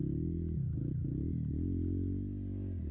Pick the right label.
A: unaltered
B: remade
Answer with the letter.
A